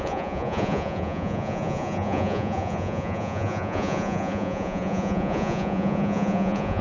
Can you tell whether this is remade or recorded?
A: remade